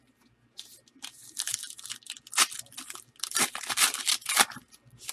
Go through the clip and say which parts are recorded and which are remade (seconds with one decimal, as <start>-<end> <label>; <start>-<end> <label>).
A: 0.0-5.1 recorded